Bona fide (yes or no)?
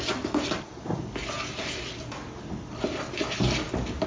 yes